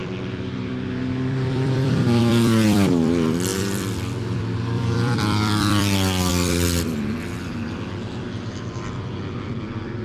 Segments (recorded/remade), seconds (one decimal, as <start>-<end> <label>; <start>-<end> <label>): 0.0-10.0 remade